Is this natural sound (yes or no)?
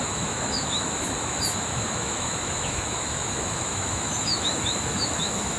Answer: no